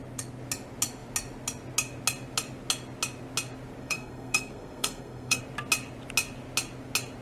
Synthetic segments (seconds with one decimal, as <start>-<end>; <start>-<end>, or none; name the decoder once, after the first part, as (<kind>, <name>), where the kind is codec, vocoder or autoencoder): 3.8-5.4 (codec, SNAC)